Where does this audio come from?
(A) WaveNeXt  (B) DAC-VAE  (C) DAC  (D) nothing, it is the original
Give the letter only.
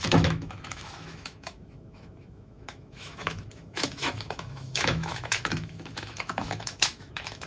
B